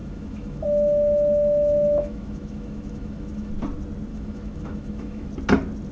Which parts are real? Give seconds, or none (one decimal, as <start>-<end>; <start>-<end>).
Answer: 3.5-4.1; 5.3-5.9